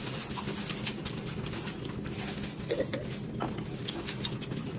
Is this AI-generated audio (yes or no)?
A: no